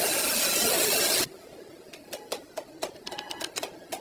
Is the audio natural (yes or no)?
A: yes